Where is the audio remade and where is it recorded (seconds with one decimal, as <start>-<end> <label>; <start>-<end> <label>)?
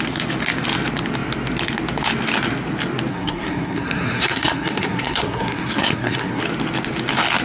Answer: 0.0-3.1 recorded; 3.1-6.4 remade; 6.4-7.4 recorded